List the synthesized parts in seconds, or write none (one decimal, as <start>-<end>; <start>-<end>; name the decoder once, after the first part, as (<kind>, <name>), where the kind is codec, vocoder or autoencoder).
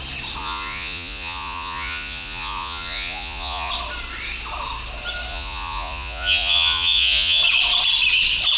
0.4-3.7 (vocoder, Vocos); 5.3-7.4